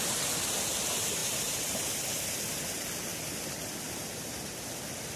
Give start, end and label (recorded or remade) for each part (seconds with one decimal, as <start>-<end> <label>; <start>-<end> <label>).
0.0-1.2 recorded; 1.2-2.4 remade; 2.4-5.2 recorded